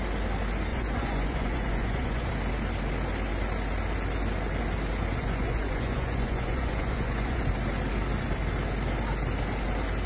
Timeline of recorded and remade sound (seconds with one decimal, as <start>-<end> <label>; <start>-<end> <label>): 0.0-0.7 recorded; 0.7-2.3 remade; 2.3-5.2 recorded; 5.2-7.4 remade; 7.4-10.1 recorded